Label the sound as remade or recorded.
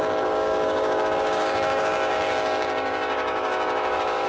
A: remade